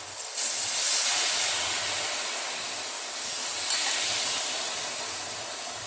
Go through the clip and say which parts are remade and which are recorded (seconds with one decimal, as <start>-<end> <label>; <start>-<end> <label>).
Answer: 0.0-1.0 recorded; 1.0-1.8 remade; 1.8-5.9 recorded